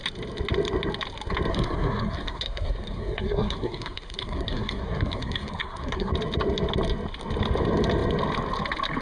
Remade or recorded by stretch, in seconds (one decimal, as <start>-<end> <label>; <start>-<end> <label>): 0.0-1.5 recorded; 1.5-6.1 remade; 6.1-9.0 recorded